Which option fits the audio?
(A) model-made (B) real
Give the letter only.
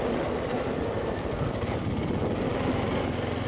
B